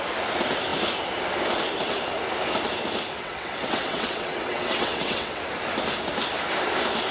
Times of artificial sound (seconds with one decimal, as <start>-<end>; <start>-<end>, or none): 3.2-5.4